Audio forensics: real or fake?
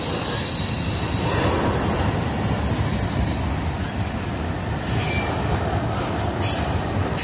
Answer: real